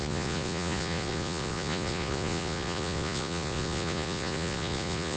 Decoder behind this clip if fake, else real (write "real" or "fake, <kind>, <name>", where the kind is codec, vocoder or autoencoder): fake, vocoder, Vocos